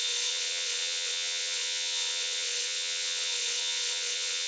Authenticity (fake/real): fake